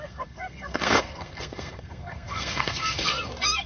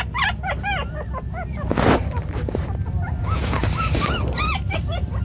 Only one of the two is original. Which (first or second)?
second